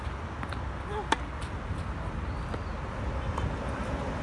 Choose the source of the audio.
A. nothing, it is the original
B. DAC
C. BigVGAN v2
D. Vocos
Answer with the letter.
A